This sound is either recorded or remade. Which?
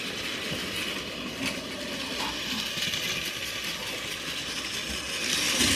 recorded